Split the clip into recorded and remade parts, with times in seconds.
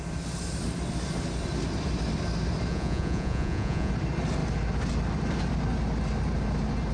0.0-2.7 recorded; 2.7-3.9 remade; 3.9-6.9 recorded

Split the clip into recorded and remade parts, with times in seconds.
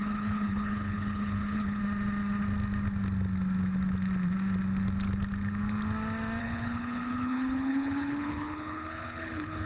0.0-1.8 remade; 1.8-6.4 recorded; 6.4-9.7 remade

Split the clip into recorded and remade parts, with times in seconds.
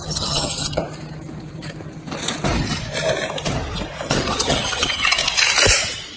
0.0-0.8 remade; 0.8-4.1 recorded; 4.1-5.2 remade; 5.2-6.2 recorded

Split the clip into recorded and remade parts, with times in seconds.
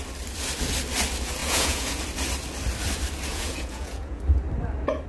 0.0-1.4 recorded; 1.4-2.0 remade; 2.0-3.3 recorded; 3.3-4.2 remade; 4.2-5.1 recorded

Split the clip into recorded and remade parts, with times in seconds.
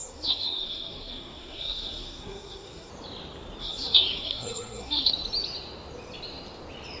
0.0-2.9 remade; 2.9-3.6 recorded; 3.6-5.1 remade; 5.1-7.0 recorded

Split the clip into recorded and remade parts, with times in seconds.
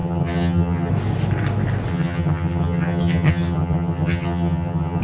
0.0-0.9 remade; 0.9-1.9 recorded; 1.9-5.0 remade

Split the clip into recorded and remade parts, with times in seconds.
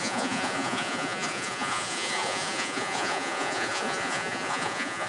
0.0-5.1 remade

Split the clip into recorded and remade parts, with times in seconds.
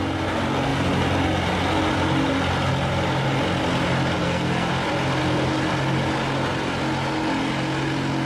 0.0-4.2 recorded; 4.2-4.7 remade; 4.7-8.3 recorded